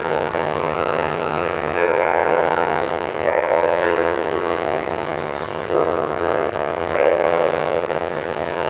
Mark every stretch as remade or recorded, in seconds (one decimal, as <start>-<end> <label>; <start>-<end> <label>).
0.0-8.7 remade